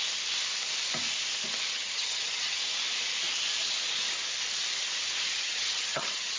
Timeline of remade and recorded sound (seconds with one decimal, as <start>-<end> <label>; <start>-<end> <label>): 0.0-1.7 recorded; 1.7-2.6 remade; 2.6-5.4 recorded; 5.4-6.4 remade